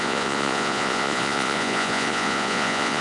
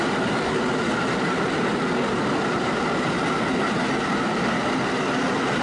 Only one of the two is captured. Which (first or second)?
second